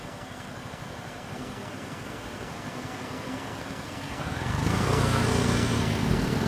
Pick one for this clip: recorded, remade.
remade